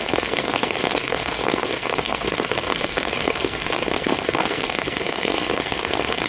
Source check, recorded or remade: remade